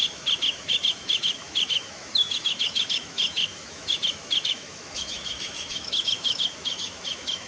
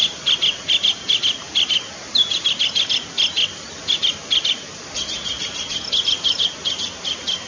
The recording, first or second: second